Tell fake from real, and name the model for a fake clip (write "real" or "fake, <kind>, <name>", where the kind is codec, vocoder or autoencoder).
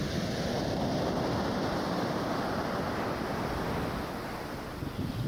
real